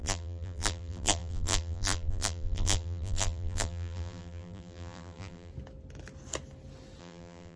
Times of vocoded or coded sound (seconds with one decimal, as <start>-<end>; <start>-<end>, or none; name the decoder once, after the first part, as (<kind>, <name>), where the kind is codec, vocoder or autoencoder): 0.0-5.5 (vocoder, BigVGAN v2); 7.0-7.6